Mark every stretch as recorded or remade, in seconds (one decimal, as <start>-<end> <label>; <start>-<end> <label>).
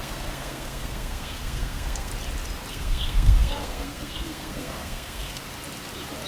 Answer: 0.0-2.1 remade; 2.1-2.7 recorded; 2.7-5.4 remade; 5.4-6.3 recorded